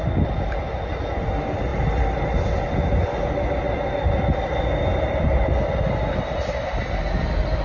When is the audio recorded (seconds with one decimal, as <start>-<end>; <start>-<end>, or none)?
0.0-7.6